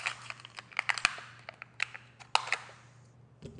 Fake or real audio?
real